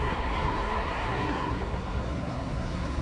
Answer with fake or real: fake